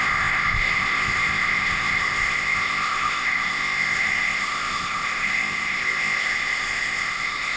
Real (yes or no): no